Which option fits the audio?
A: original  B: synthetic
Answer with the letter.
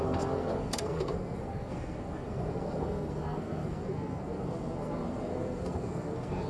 B